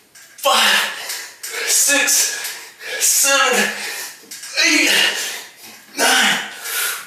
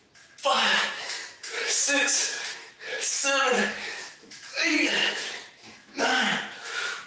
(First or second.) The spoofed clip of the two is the second